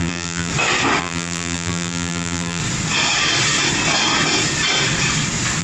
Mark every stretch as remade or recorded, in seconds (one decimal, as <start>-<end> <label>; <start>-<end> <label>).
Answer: 0.0-0.5 remade; 0.5-1.0 recorded; 1.0-2.6 remade; 2.6-5.6 recorded